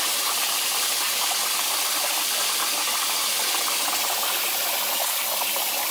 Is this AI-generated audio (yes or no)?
no